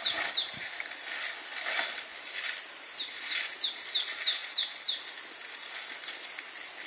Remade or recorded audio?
recorded